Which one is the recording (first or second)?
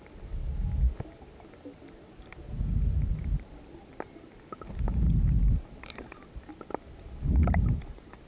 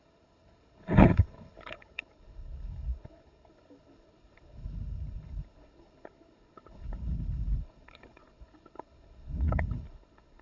first